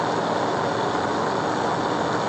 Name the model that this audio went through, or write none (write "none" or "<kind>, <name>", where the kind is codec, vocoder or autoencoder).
none